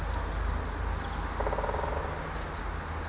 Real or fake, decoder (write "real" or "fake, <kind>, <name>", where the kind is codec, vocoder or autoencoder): real